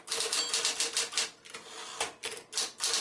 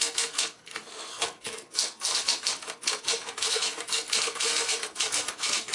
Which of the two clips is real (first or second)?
first